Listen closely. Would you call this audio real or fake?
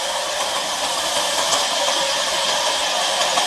real